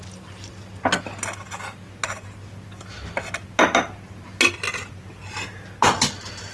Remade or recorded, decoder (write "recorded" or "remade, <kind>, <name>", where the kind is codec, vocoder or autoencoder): recorded